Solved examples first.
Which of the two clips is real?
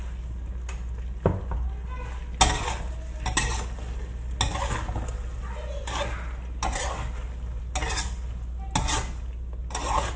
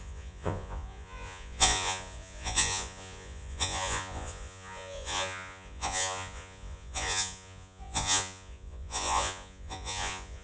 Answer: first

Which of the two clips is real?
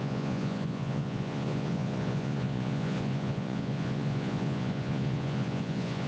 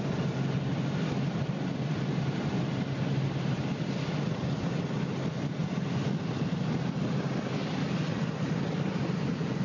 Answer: second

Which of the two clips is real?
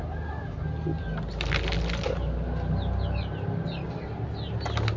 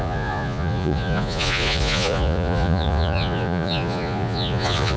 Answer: first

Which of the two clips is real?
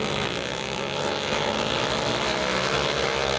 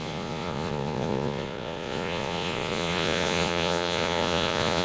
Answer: first